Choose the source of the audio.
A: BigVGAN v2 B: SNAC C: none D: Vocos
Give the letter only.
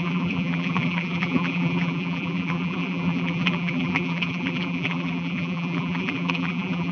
A